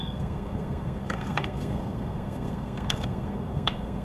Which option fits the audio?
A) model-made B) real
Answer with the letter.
A